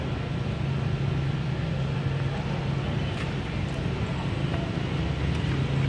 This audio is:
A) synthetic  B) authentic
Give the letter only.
B